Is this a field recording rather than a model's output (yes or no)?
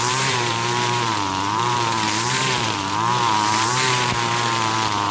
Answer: no